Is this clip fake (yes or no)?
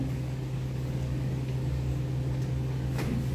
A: yes